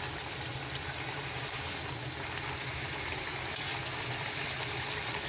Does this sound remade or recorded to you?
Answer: recorded